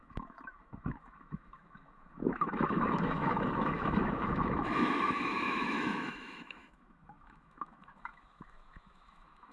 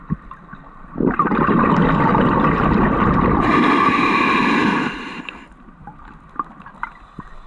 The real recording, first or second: second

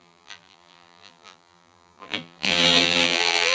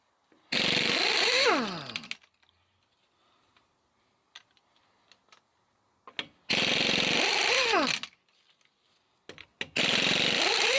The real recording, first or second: second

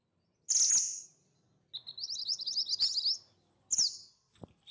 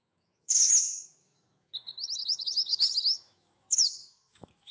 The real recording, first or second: first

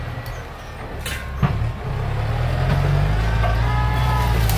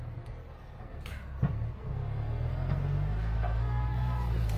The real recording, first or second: first